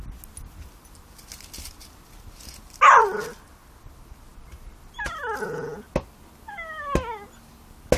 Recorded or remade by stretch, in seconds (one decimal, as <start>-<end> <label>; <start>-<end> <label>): 0.0-8.0 recorded